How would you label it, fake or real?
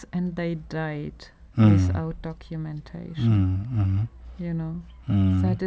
real